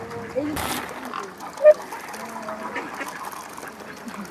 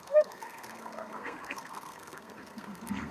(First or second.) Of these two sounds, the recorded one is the first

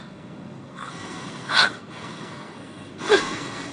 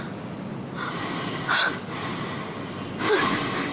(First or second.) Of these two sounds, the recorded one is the second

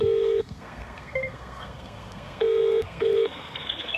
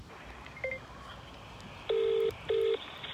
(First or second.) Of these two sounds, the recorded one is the second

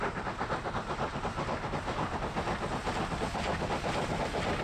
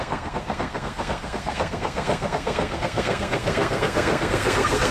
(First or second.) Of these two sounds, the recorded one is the first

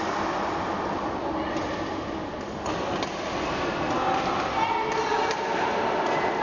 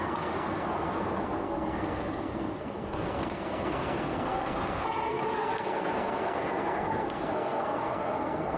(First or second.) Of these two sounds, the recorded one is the first